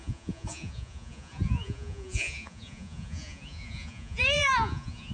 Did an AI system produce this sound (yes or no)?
yes